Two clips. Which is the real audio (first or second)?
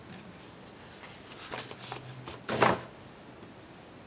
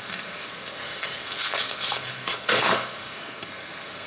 first